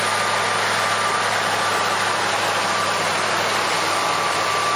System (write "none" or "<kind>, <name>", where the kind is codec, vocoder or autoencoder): none